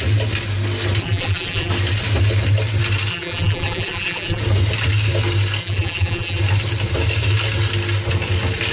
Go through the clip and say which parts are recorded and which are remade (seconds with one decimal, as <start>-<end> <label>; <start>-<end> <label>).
0.0-1.0 recorded; 1.0-1.7 remade; 1.7-3.1 recorded; 3.1-4.4 remade; 4.4-5.6 recorded; 5.6-6.4 remade; 6.4-8.7 recorded